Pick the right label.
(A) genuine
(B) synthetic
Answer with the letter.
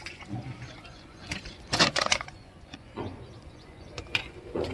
B